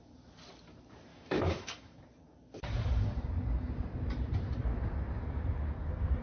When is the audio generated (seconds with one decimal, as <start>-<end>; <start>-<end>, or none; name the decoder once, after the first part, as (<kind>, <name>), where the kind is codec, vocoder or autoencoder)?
1.1-2.0 (autoencoder, DAC-VAE)